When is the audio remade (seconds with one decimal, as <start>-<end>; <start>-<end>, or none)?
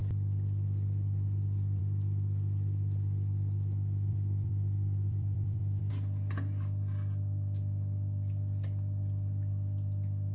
4.1-5.8